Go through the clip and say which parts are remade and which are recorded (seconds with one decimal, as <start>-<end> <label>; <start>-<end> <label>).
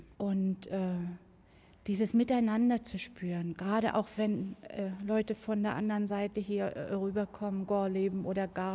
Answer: 0.0-1.8 recorded; 1.8-6.1 remade; 6.1-8.7 recorded